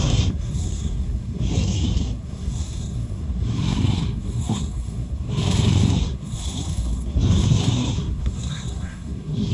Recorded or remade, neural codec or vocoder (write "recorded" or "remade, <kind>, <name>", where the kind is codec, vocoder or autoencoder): remade, codec, SNAC